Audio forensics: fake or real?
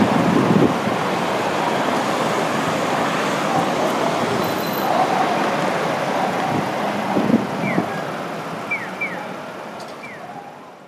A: real